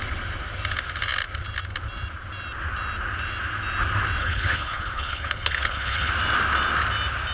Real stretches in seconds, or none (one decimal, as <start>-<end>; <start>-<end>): 0.0-4.2; 6.1-7.3

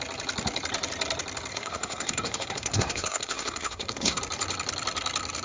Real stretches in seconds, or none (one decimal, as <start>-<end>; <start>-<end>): 0.0-1.5; 4.2-5.4

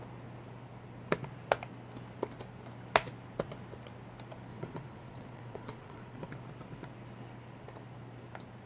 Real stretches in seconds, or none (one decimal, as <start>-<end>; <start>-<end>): 0.0-4.5; 6.3-8.7